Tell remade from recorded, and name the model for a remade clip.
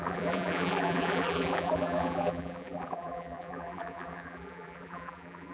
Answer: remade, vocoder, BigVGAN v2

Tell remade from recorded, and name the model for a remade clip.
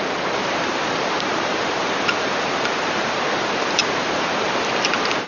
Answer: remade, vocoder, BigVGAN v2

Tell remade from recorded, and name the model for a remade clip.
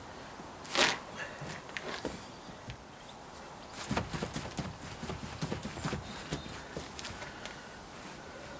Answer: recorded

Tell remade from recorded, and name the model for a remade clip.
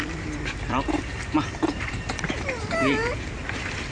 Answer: remade, vocoder, BigVGAN v2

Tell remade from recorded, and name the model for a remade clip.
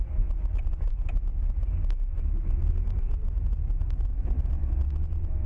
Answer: recorded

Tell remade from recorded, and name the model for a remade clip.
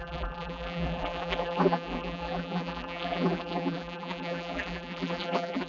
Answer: remade, vocoder, BigVGAN v2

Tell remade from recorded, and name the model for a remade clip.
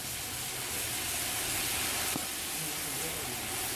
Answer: recorded